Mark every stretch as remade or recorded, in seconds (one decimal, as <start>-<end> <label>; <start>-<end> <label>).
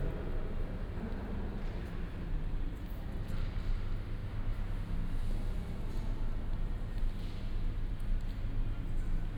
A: 0.0-9.4 recorded